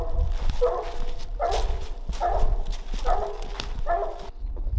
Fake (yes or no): no